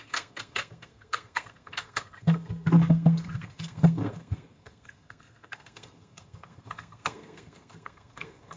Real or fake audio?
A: fake